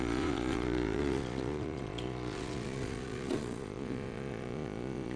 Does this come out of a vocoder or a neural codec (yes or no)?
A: yes